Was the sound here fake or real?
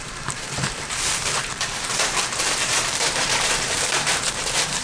fake